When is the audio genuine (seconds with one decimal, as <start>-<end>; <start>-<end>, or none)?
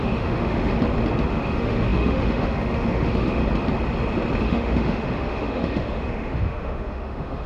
0.7-1.3; 3.4-4.4